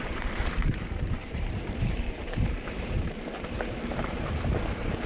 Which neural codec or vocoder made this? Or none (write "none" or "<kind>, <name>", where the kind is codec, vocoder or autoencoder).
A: vocoder, BigVGAN v2